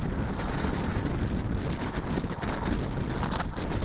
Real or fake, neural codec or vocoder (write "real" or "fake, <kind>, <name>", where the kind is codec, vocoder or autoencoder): real